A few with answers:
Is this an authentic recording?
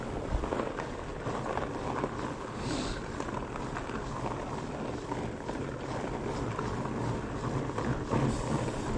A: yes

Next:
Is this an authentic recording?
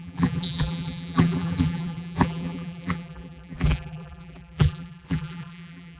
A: no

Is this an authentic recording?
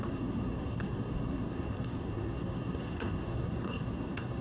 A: no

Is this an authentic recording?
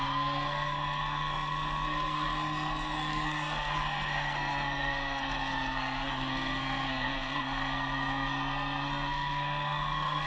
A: no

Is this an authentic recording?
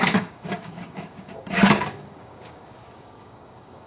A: no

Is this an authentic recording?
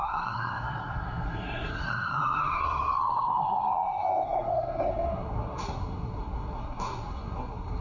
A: no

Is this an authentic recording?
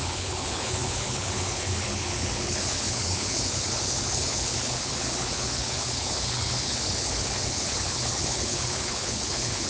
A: no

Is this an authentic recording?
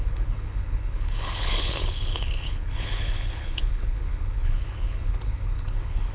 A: no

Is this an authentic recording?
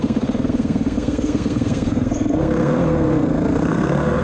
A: no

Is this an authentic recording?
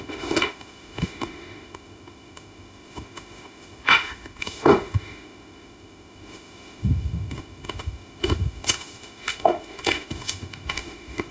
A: no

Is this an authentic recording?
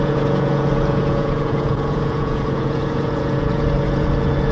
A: no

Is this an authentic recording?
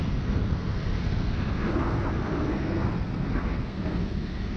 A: no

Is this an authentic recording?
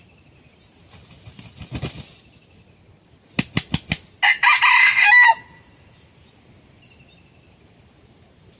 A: yes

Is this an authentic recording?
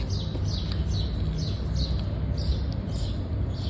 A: yes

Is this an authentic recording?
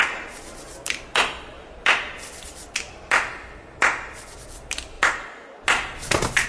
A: yes